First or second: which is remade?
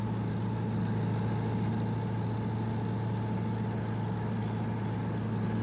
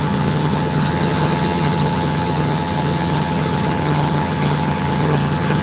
second